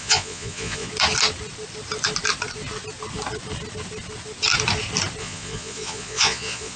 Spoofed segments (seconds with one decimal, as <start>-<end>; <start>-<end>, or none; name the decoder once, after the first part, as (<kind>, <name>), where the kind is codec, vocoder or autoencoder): 0.0-0.9 (vocoder, Vocos); 5.2-6.8